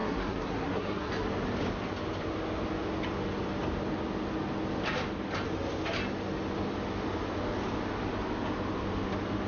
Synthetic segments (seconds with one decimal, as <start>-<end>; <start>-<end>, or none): 0.0-1.1